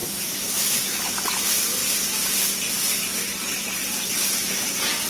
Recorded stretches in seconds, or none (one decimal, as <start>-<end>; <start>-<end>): 1.0-5.1